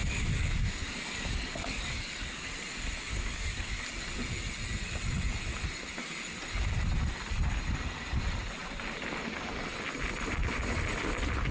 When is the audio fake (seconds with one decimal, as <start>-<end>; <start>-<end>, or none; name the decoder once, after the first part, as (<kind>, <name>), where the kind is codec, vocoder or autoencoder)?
0.0-2.5 (codec, DAC); 3.1-3.8